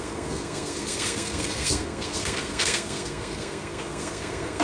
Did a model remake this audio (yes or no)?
yes